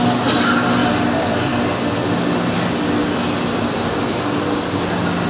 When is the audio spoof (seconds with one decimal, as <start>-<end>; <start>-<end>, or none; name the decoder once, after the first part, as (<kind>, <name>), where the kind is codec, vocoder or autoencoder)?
0.8-1.8 (vocoder, BigVGAN v2)

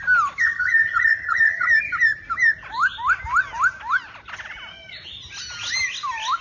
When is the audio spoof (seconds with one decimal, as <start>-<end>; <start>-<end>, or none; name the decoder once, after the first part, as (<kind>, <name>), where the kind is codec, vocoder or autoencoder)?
0.4-1.7 (vocoder, HiFi-GAN)